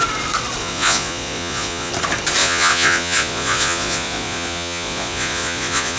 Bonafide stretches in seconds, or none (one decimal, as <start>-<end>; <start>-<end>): 0.0-0.6; 1.9-2.4